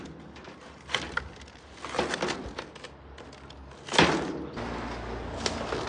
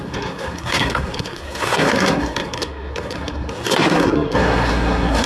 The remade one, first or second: second